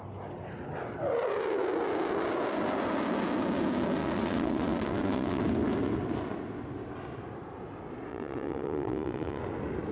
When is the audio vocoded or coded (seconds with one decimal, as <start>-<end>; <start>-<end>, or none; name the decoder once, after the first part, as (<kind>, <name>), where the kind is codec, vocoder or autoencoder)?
4.0-5.4 (vocoder, WaveNeXt); 8.1-9.4

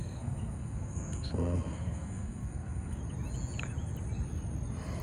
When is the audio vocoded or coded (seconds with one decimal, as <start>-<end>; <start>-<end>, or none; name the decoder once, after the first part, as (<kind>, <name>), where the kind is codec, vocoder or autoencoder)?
0.0-3.0 (codec, SNAC)